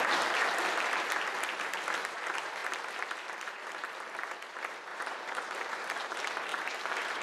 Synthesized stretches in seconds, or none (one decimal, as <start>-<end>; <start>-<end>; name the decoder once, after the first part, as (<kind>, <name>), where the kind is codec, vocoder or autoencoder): 4.9-5.7 (vocoder, BigVGAN v2); 6.5-7.2